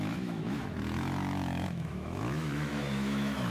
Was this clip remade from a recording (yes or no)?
yes